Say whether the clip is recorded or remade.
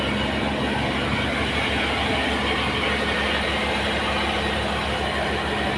recorded